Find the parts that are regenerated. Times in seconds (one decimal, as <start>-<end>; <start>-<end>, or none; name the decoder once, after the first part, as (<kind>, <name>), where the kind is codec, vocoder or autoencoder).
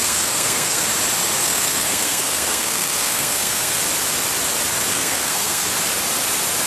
0.0-0.8 (codec, SNAC); 1.4-3.8; 4.9-5.7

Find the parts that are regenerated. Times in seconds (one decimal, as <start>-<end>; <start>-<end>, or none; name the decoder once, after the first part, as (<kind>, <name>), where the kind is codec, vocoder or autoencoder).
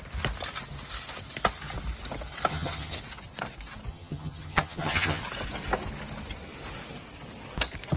2.5-3.0 (vocoder, HiFi-GAN); 3.9-5.2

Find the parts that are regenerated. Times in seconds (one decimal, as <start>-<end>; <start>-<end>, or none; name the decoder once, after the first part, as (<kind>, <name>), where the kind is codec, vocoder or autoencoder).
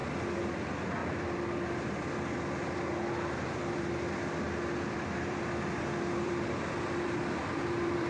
0.0-8.1 (vocoder, BigVGAN v2)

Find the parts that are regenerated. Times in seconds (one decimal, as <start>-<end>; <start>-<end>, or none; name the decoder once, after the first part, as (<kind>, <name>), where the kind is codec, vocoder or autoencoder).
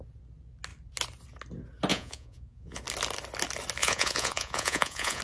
1.9-2.8 (vocoder, Vocos); 3.8-5.2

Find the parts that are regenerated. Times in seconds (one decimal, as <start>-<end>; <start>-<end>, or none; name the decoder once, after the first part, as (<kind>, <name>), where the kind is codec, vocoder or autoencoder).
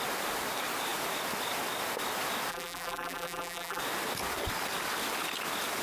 2.5-3.8 (vocoder, BigVGAN v2)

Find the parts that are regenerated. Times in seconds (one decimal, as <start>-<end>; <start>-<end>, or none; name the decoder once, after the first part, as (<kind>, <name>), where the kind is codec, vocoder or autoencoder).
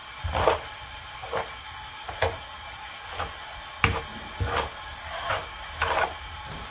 0.0-2.1 (vocoder, BigVGAN v2); 4.1-5.3